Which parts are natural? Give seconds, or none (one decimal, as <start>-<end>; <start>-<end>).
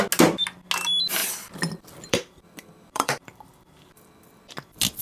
0.0-1.2; 4.2-5.0